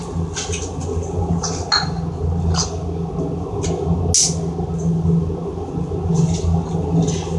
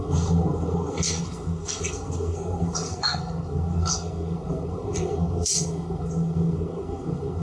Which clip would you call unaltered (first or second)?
first